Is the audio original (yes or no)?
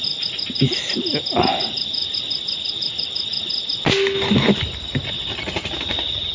yes